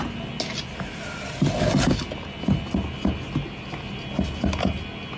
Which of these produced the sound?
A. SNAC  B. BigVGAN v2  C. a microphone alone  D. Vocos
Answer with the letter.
C